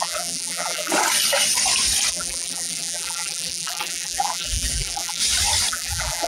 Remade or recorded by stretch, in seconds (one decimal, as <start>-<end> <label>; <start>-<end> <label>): 0.0-0.9 remade; 0.9-2.1 recorded; 2.1-5.2 remade; 5.2-5.7 recorded; 5.7-6.3 remade